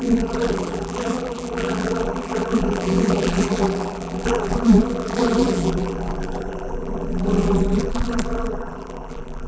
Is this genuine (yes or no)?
no